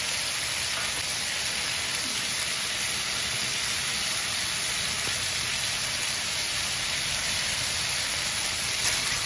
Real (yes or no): yes